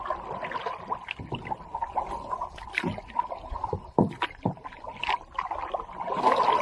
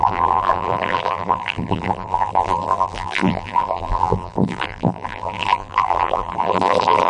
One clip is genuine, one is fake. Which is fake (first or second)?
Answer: second